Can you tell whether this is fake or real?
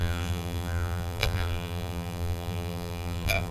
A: fake